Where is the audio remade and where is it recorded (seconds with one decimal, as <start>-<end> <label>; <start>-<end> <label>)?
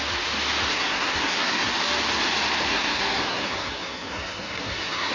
0.0-0.7 recorded; 0.7-1.7 remade; 1.7-2.7 recorded; 2.7-5.1 remade